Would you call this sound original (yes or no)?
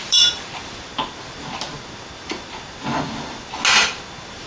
yes